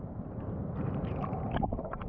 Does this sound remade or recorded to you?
remade